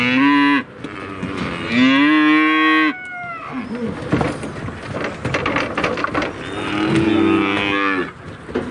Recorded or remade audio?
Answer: recorded